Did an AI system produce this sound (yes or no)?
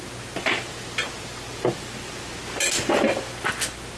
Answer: no